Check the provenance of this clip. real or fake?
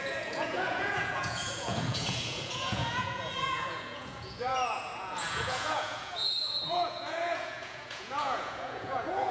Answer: fake